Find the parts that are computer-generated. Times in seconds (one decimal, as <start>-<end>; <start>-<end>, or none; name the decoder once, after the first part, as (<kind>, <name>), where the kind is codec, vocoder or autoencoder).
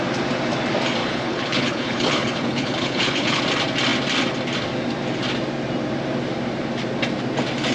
1.0-3.4 (codec, HILCodec)